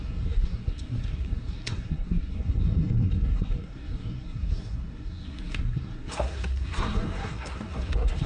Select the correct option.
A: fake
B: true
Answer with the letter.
A